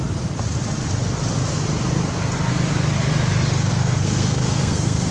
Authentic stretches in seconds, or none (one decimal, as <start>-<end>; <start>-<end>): 0.0-3.7